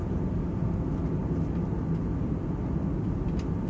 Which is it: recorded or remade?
recorded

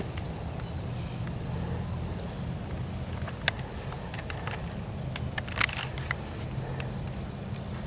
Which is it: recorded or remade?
recorded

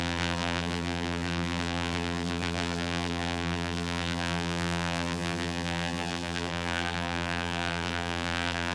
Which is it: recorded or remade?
remade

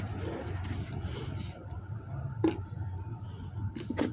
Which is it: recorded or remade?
recorded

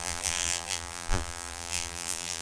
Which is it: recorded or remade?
remade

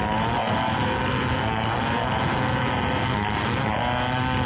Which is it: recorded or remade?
recorded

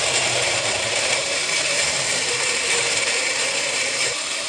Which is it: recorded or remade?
remade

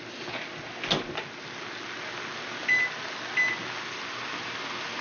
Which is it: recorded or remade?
recorded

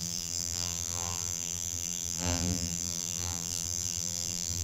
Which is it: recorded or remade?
remade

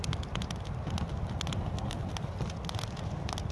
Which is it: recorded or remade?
recorded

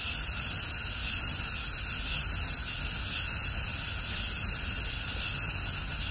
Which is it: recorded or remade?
recorded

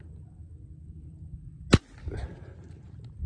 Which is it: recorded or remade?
recorded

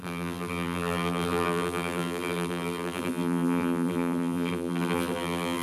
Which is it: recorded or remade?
remade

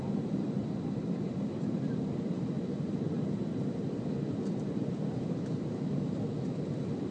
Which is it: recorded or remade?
remade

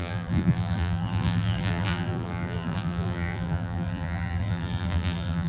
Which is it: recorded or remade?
remade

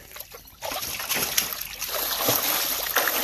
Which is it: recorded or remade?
recorded